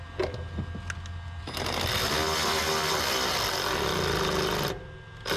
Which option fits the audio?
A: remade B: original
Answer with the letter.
B